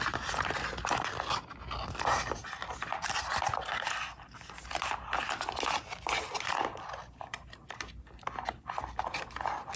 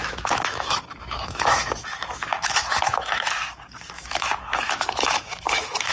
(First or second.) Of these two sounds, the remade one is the second